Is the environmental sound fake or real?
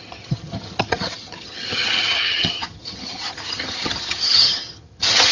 fake